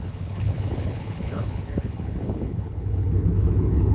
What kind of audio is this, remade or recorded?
remade